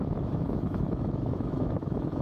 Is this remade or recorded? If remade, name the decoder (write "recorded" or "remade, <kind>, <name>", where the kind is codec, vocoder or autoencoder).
remade, autoencoder, DAC-VAE